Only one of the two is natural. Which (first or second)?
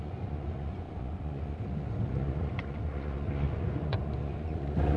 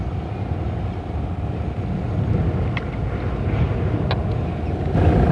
second